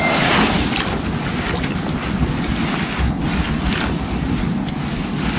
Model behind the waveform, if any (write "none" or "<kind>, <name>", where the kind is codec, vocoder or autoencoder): none